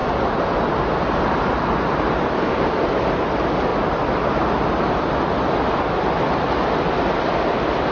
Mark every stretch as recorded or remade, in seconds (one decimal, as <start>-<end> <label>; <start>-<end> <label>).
0.0-7.9 recorded